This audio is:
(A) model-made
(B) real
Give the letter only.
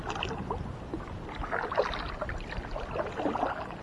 B